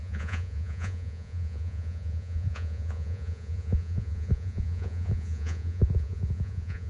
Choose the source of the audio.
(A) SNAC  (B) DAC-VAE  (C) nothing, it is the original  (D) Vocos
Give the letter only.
D